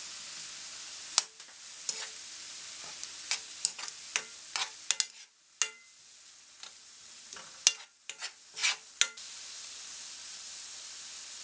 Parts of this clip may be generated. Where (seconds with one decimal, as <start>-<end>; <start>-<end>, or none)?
none